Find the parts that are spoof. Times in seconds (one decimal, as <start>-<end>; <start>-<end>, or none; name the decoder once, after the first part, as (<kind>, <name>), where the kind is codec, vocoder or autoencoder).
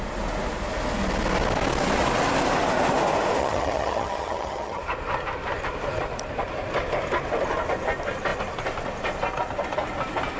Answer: 3.4-4.8 (vocoder, HiFi-GAN)